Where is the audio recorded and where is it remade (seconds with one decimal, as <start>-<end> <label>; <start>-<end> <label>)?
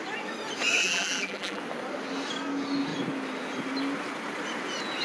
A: 0.0-0.8 recorded; 0.8-1.6 remade; 1.6-5.0 recorded